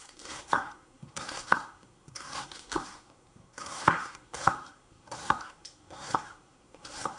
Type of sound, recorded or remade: remade